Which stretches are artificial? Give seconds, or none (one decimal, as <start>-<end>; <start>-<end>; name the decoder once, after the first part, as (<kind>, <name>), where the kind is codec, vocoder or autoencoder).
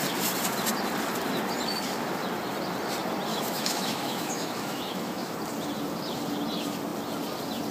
3.3-5.3 (autoencoder, DAC-VAE)